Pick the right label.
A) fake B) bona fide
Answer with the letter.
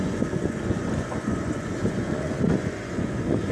A